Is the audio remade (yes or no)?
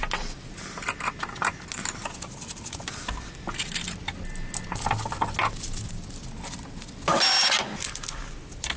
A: no